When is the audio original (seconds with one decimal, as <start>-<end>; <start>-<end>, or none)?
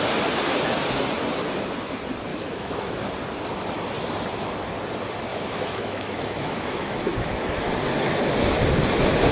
0.0-2.3; 3.1-5.3; 7.7-9.3